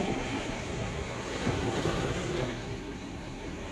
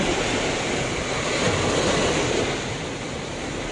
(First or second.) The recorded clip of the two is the second